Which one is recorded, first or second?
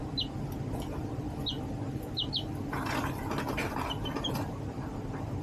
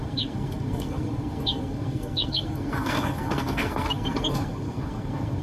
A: first